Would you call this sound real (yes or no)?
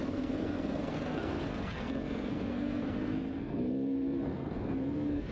no